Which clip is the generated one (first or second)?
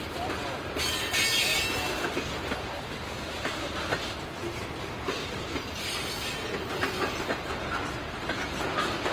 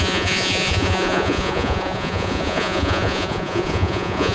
second